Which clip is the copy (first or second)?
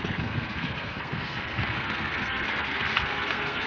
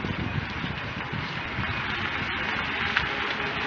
first